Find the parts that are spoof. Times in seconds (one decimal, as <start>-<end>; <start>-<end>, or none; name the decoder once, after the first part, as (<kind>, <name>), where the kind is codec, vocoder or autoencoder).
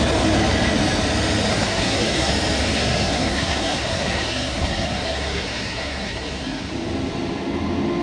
1.5-2.3 (codec, SNAC); 2.7-6.7